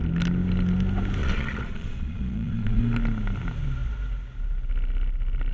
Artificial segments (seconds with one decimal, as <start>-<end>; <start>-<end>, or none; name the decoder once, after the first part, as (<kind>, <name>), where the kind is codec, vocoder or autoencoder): 1.2-2.8 (vocoder, Vocos)